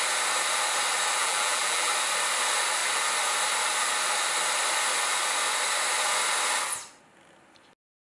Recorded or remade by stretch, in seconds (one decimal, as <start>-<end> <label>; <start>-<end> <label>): 0.0-1.2 recorded; 1.2-1.9 remade; 1.9-8.1 recorded